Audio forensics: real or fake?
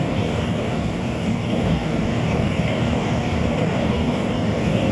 fake